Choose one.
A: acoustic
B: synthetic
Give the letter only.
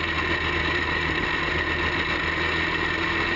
A